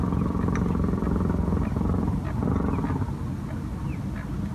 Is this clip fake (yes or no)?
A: no